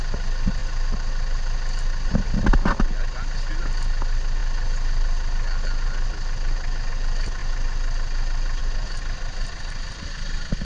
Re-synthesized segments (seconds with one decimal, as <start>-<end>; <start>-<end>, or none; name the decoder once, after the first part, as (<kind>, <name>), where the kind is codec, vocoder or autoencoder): none